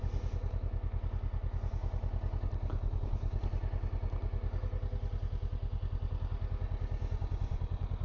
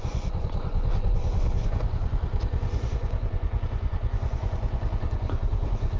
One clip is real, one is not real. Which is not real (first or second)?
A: second